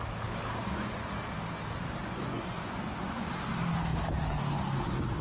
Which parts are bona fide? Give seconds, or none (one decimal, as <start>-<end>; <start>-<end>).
0.0-0.6; 1.1-2.0; 3.3-5.2